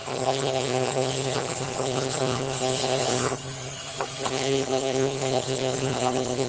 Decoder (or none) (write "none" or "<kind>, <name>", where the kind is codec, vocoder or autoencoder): vocoder, HiFi-GAN